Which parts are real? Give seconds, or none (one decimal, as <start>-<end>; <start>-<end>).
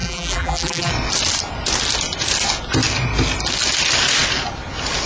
0.9-5.1